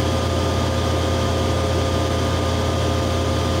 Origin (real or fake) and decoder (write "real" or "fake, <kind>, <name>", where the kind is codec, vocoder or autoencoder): real